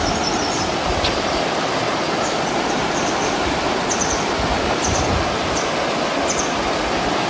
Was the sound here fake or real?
real